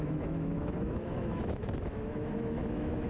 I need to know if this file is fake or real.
fake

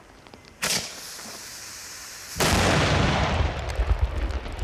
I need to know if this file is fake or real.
real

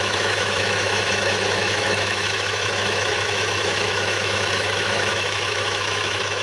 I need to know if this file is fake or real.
fake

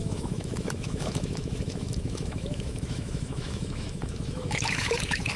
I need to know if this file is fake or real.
fake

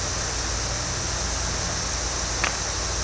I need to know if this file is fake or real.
real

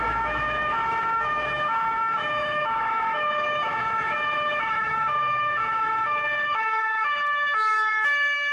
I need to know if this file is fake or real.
fake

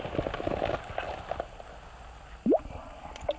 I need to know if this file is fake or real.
real